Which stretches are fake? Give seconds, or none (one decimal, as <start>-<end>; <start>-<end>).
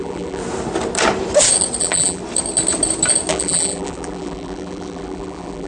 0.0-0.4; 1.8-2.2; 3.3-5.7